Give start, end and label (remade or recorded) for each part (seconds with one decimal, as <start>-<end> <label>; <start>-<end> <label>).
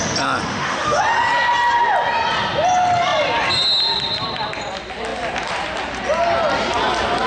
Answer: 0.0-0.5 recorded; 0.5-1.0 remade; 1.0-7.3 recorded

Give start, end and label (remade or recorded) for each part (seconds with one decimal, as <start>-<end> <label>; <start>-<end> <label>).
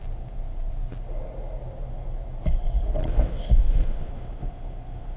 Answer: 0.0-3.1 recorded; 3.1-5.2 remade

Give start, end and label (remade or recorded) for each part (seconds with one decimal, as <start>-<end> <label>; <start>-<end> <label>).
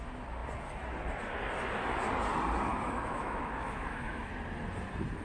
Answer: 0.0-2.7 recorded; 2.7-4.3 remade; 4.3-5.2 recorded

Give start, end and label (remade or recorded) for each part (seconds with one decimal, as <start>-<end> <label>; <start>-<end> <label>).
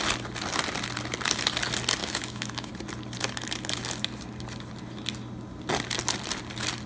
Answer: 0.0-2.0 recorded; 2.0-2.7 remade; 2.7-6.9 recorded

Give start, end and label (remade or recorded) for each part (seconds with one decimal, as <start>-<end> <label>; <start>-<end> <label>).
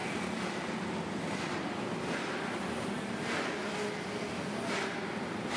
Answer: 0.0-5.6 recorded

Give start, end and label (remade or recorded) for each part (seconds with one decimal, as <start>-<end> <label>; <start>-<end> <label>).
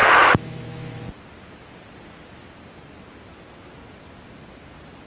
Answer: 0.0-1.0 remade; 1.0-5.1 recorded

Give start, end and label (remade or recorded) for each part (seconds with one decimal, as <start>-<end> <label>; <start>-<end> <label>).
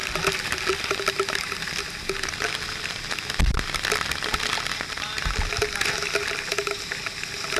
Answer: 0.0-7.6 recorded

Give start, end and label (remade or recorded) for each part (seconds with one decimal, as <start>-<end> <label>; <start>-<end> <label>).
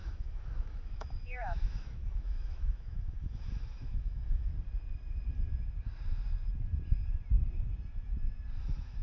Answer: 0.0-4.5 remade; 4.5-8.6 recorded; 8.6-9.0 remade